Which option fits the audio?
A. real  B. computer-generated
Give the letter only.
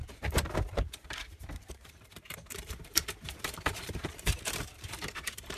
B